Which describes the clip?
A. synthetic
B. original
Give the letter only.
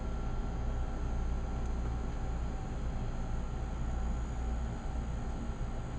B